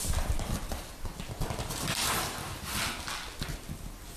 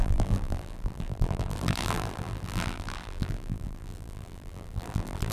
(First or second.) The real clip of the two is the first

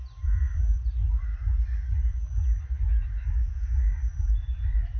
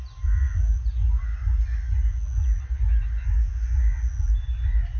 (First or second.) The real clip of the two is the second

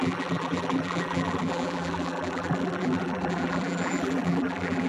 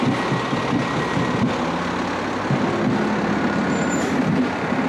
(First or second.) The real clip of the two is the second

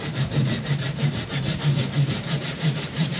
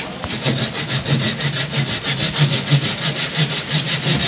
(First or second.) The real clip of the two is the second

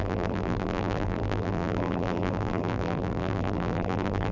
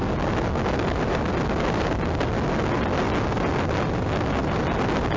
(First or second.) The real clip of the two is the second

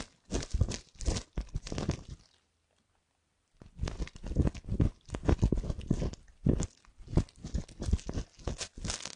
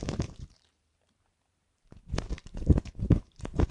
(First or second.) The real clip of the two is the first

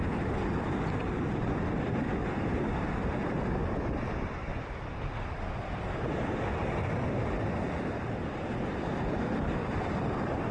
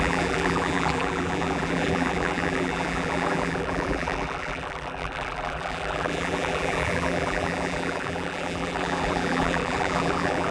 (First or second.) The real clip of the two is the first